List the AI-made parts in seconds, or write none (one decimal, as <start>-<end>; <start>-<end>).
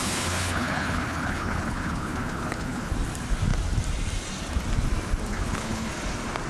0.0-2.9; 5.3-5.9